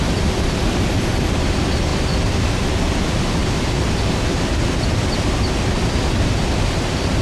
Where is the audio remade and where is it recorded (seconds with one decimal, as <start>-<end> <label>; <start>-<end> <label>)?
0.0-7.2 recorded